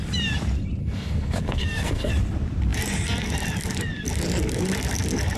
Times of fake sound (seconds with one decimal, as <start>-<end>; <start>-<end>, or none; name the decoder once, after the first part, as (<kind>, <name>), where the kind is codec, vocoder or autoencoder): 0.8-2.1 (codec, SNAC)